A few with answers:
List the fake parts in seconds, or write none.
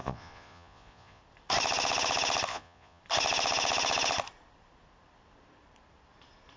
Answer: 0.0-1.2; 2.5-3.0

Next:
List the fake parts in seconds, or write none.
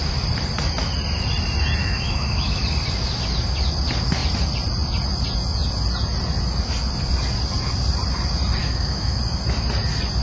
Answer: 1.8-2.6; 8.6-9.2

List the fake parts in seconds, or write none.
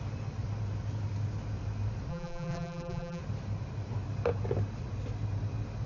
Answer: 2.1-3.2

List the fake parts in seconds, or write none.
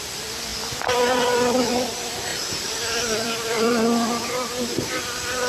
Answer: 0.5-1.7; 2.3-3.7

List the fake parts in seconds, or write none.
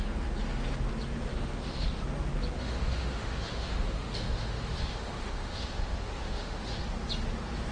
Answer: 1.3-2.0; 2.6-6.8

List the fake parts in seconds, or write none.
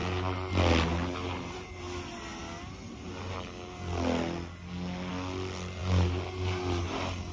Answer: none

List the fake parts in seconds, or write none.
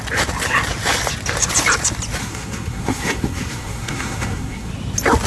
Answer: 2.2-4.7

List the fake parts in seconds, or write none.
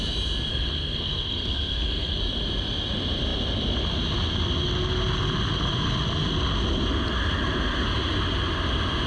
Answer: 0.5-2.2